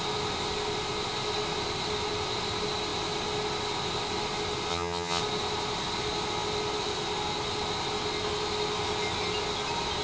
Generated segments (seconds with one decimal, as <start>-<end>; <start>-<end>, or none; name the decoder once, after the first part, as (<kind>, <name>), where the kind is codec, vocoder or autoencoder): 4.7-5.2 (vocoder, HiFi-GAN)